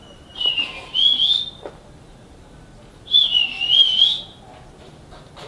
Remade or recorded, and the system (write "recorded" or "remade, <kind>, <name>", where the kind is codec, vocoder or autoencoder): recorded